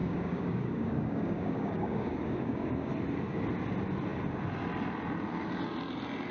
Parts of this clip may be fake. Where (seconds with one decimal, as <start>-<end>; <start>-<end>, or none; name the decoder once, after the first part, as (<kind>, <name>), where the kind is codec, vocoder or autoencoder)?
0.0-2.9 (codec, DAC)